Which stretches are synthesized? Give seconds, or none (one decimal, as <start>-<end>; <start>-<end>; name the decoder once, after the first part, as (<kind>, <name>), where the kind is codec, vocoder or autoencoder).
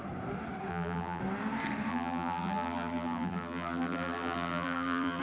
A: 0.7-1.2 (vocoder, BigVGAN v2); 1.9-5.2